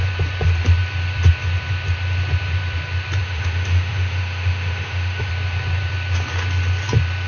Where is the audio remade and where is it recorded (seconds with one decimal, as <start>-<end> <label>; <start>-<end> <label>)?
0.0-3.2 recorded; 3.2-5.3 remade; 5.3-7.3 recorded